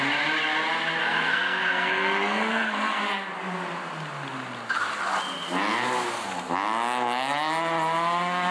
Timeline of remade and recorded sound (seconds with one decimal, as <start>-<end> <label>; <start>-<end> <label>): 0.0-1.0 recorded; 1.0-3.0 remade; 3.0-8.5 recorded